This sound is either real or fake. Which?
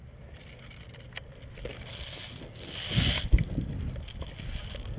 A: real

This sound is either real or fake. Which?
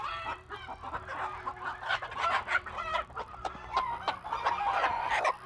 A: fake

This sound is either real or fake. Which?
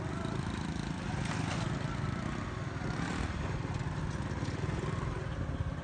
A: real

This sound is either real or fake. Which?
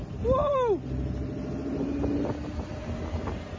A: real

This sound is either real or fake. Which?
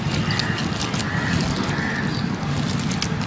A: real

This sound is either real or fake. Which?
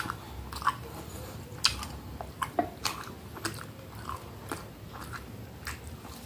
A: real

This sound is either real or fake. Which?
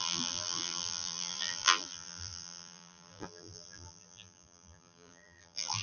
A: fake